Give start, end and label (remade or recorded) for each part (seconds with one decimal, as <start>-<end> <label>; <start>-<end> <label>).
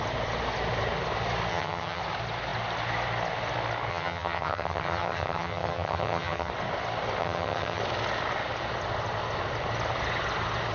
0.0-1.5 recorded; 1.5-2.0 remade; 2.0-3.9 recorded; 3.9-6.5 remade; 6.5-7.2 recorded; 7.2-7.8 remade; 7.8-10.7 recorded